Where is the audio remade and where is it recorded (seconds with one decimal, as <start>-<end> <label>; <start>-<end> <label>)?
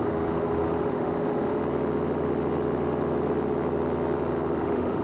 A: 0.0-1.6 remade; 1.6-4.6 recorded; 4.6-5.0 remade